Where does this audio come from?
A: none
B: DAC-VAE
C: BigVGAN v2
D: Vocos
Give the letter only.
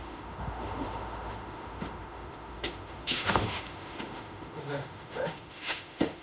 B